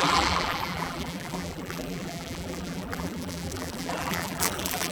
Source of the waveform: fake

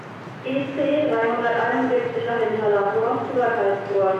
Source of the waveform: real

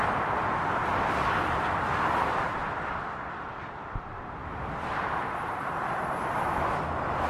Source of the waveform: real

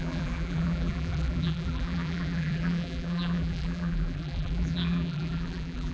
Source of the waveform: fake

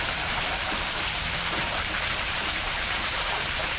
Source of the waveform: fake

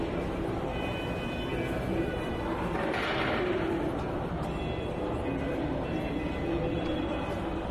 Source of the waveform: real